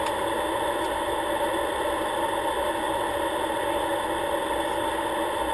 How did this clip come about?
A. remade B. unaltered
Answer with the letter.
B